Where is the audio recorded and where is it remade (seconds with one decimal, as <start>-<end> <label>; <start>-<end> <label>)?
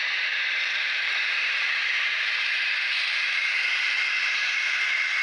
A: 0.0-5.2 remade